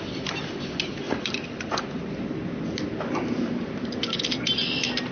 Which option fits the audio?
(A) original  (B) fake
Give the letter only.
A